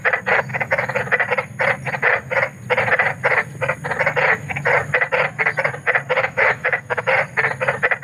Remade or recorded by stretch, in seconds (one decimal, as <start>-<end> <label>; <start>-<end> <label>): 0.0-0.5 recorded; 0.5-1.0 remade; 1.0-6.2 recorded; 6.2-7.1 remade; 7.1-8.0 recorded